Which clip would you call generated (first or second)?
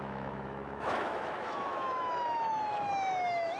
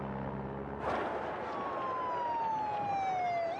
first